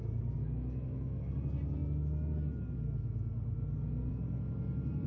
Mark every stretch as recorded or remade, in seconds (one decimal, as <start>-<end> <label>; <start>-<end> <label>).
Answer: 0.0-0.4 recorded; 0.4-1.3 remade; 1.3-5.1 recorded